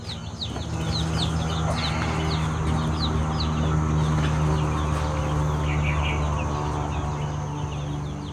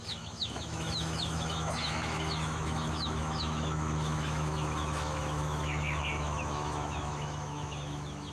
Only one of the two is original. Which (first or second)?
first